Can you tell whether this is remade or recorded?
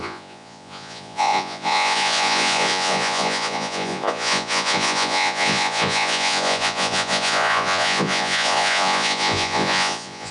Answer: remade